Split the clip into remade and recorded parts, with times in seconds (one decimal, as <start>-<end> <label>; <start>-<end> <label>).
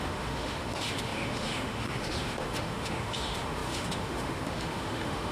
0.0-5.3 remade